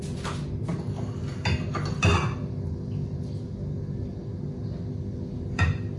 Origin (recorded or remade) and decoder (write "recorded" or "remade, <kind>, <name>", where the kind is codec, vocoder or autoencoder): recorded